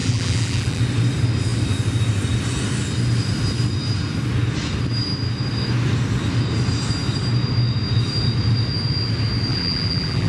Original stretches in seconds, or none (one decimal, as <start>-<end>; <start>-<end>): 0.8-9.5